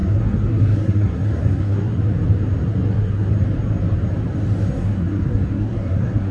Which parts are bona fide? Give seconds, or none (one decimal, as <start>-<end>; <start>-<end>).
2.0-2.6; 3.3-4.6